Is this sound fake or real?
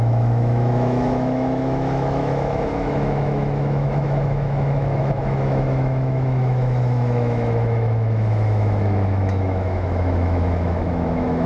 fake